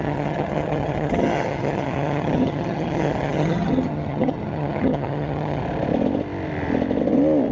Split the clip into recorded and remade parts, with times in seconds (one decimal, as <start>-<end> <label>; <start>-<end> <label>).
0.0-5.6 remade; 5.6-7.5 recorded